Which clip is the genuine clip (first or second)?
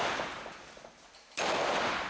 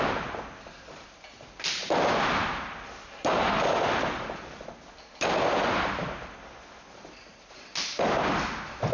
second